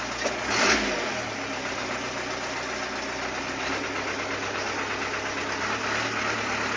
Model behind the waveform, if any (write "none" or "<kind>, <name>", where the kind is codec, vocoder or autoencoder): none